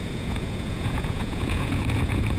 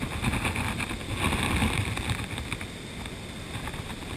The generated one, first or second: first